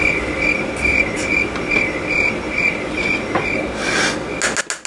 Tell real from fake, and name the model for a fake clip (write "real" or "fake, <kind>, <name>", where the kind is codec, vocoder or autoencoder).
real